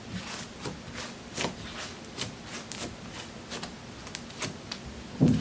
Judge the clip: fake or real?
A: real